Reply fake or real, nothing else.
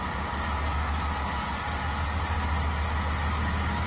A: real